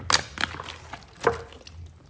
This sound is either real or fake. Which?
real